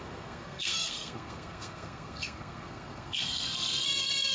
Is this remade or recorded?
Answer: remade